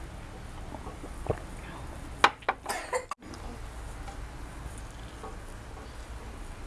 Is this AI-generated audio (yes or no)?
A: no